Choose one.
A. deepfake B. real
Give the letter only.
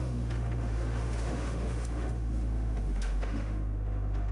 A